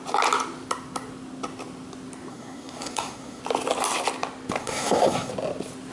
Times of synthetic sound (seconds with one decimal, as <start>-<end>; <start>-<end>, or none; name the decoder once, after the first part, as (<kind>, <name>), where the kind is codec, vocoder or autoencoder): 2.3-3.4 (codec, SNAC); 4.6-5.3